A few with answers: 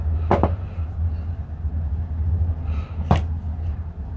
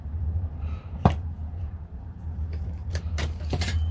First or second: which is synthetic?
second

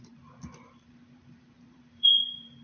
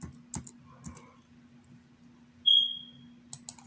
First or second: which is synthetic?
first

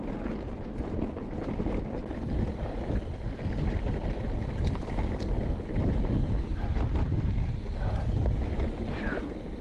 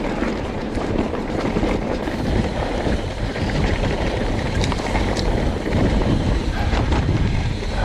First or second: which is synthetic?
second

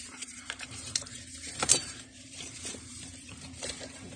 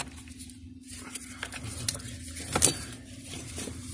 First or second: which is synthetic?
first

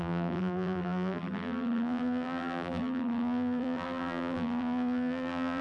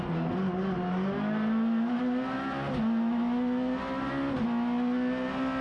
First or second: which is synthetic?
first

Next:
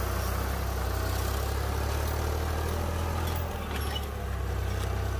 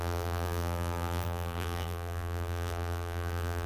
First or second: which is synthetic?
second